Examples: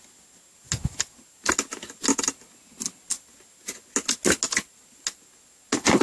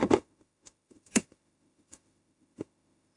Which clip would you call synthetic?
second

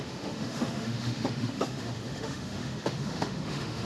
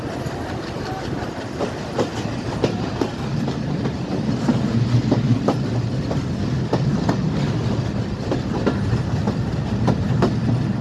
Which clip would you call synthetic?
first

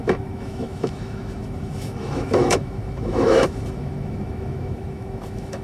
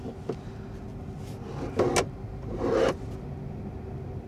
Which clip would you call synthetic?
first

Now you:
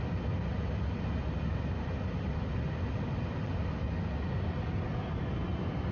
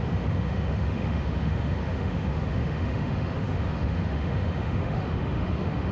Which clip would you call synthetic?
second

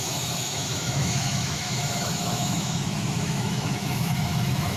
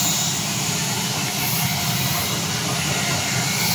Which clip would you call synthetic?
first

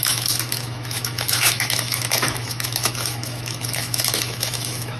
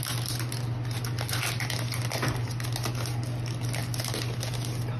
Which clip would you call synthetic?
first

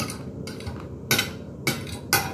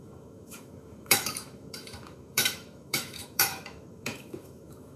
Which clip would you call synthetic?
second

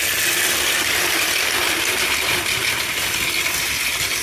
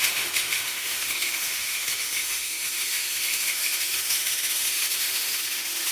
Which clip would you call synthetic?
second